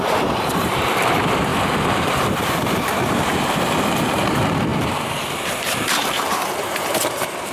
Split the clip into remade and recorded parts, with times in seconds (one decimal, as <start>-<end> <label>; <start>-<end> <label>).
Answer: 0.0-7.5 remade